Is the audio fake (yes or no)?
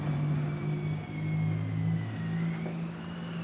no